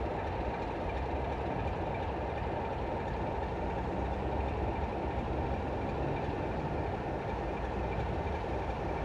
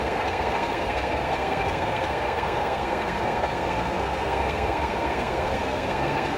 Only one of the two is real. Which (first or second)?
first